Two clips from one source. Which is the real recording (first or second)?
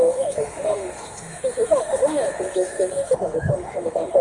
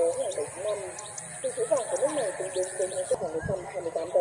second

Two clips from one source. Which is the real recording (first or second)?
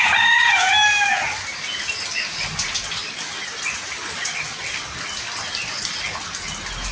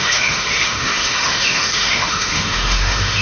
first